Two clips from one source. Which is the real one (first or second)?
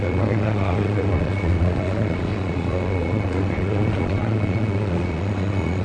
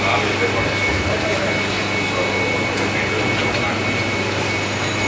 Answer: second